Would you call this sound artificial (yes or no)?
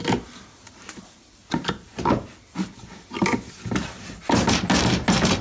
no